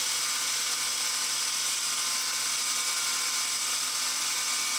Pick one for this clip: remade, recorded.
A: recorded